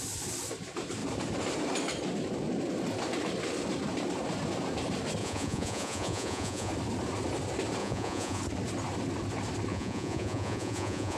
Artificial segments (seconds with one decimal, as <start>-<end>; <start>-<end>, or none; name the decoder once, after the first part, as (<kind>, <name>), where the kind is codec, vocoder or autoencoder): 5.2-6.7 (vocoder, Vocos); 7.8-8.4; 9.7-11.2